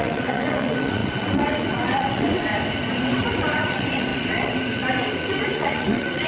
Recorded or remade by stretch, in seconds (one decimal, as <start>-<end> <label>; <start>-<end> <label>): 0.0-2.5 remade; 2.5-3.0 recorded; 3.0-6.3 remade